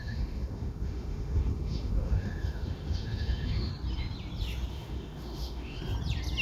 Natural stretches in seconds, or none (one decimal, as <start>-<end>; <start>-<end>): 3.7-4.7; 5.8-6.4